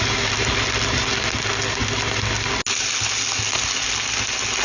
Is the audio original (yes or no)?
yes